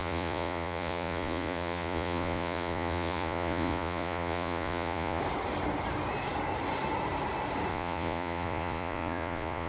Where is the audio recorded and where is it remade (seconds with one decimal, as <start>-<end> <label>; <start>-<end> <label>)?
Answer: 0.0-5.2 remade; 5.2-7.7 recorded; 7.7-9.7 remade